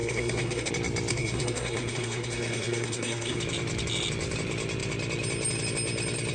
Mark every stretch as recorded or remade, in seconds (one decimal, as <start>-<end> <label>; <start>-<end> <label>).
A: 0.0-0.7 remade; 0.7-1.1 recorded; 1.1-3.4 remade; 3.4-6.3 recorded